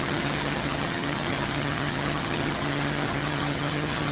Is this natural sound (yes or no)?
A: no